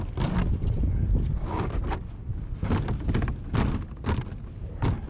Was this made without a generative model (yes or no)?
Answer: yes